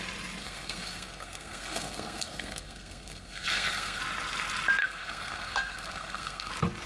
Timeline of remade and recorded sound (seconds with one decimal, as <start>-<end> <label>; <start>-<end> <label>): 0.0-0.4 recorded; 0.4-4.0 remade; 4.0-4.8 recorded; 4.8-6.5 remade; 6.5-6.9 recorded